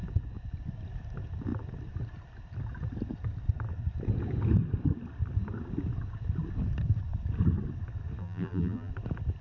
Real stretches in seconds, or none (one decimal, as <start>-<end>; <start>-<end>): 0.0-8.2; 8.9-9.4